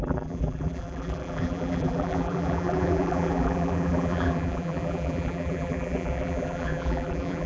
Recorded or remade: remade